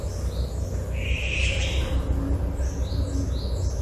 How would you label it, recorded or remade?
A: recorded